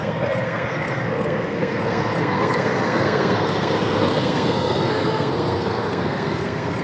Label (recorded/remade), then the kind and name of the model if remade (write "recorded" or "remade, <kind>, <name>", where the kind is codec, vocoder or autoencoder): remade, codec, SNAC